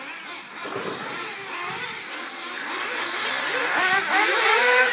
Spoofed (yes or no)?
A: no